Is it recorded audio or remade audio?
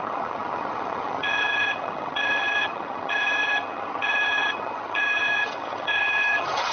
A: remade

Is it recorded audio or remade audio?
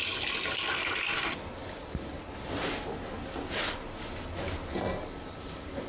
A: recorded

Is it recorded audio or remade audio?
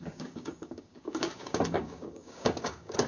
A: remade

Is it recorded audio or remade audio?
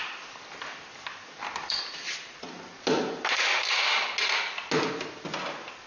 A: recorded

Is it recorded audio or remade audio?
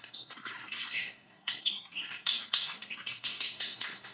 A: remade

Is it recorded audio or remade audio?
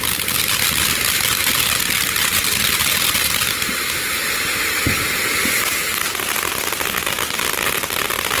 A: recorded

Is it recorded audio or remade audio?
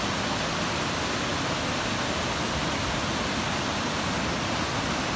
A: recorded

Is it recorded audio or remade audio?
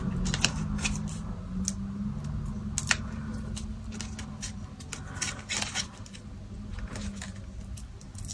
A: recorded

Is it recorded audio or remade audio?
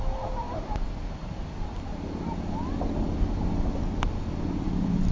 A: recorded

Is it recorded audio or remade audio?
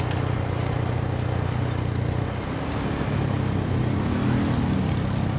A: recorded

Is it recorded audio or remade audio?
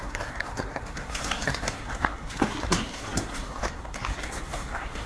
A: remade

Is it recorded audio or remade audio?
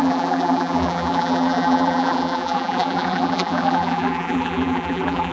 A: remade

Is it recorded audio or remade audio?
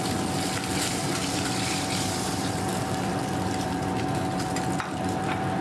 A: remade